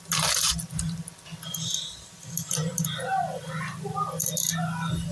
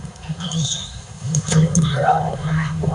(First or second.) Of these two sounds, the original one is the first